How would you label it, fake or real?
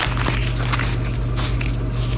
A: real